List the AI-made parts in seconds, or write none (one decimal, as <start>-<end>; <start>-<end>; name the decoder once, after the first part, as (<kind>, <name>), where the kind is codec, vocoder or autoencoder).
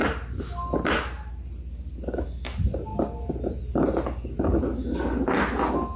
none